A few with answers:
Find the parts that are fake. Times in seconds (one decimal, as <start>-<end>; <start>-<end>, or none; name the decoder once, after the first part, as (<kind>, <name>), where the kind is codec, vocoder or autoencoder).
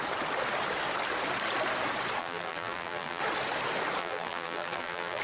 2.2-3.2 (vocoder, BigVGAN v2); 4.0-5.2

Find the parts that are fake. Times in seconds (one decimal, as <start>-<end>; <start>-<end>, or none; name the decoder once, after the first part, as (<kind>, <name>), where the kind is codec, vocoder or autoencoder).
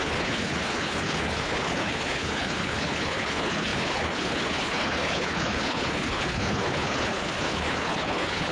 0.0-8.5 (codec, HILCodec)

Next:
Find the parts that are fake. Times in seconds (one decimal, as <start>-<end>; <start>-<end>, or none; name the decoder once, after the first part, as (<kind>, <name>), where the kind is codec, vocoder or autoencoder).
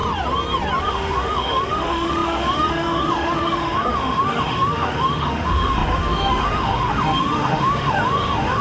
0.8-8.6 (autoencoder, DAC-VAE)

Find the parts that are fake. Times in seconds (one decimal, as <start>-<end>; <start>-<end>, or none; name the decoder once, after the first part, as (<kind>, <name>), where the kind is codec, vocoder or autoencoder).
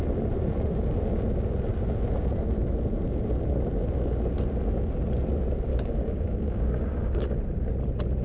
5.7-7.4 (codec, DAC)